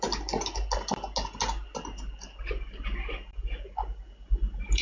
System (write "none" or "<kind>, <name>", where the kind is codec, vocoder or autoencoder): none